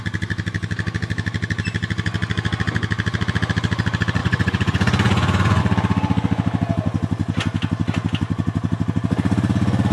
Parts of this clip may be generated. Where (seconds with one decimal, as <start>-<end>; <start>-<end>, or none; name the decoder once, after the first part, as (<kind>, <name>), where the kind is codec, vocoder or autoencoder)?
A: 4.2-5.6 (vocoder, Vocos)